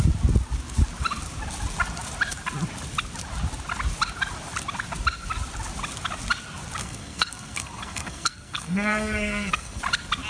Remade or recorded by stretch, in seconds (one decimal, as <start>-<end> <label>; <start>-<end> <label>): 0.0-6.8 recorded; 6.8-9.8 remade; 9.8-10.3 recorded